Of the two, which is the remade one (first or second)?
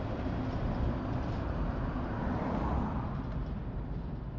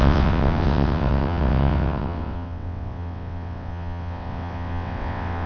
second